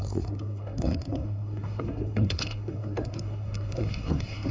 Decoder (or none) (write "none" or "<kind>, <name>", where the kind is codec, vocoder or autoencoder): codec, SNAC